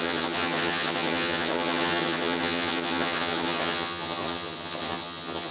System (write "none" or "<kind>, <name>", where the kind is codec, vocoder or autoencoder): vocoder, HiFi-GAN